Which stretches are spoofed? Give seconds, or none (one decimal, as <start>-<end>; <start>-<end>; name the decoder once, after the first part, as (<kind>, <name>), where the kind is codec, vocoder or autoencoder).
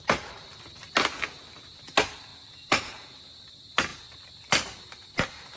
none